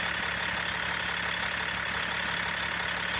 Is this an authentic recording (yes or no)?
yes